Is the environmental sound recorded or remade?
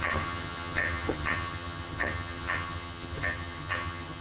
remade